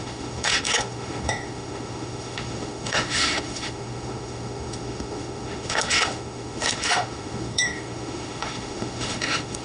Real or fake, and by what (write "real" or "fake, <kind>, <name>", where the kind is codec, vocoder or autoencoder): fake, autoencoder, DAC-VAE